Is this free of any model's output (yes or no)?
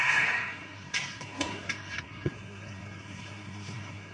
no